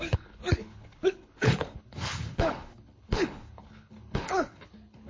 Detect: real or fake fake